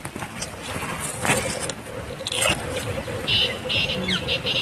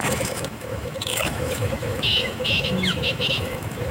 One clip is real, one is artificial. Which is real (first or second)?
first